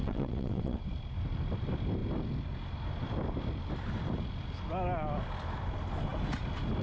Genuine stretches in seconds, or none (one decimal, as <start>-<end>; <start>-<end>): 0.8-6.8

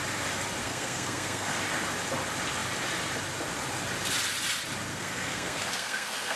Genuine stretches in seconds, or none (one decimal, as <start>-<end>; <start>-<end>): 0.0-0.6; 1.6-4.9